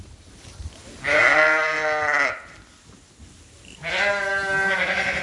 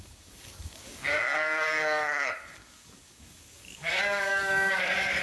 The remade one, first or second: second